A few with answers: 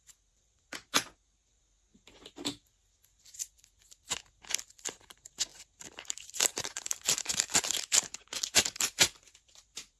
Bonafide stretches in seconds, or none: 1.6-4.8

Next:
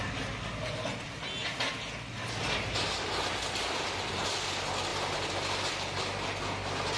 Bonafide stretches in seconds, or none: 0.0-7.0

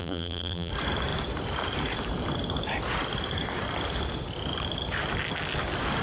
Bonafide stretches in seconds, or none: 0.7-6.0

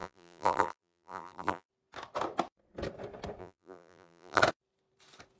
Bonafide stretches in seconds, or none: 1.7-3.4; 4.4-5.4

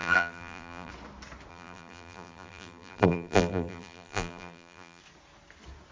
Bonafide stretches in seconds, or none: 0.9-1.5; 5.0-5.9